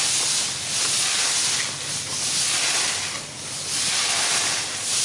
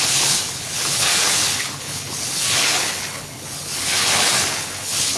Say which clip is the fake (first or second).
second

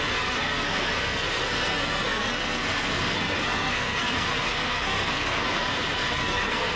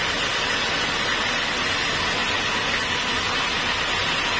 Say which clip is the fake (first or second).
first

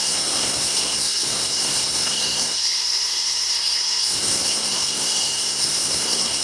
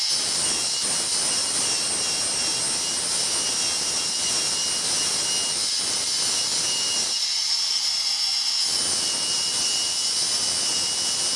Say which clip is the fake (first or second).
first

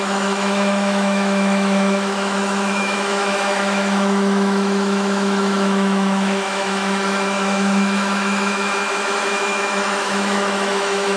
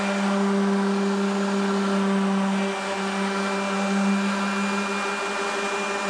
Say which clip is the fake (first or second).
first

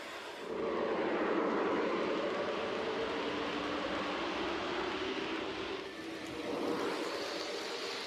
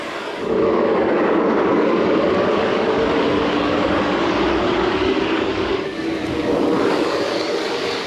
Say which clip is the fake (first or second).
second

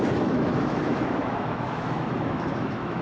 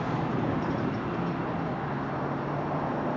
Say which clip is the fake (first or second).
first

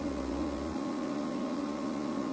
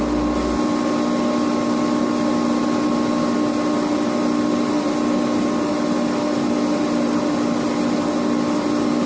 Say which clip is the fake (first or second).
first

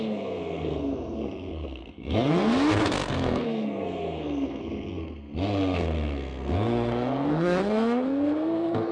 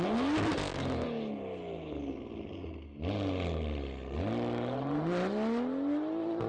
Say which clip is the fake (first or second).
first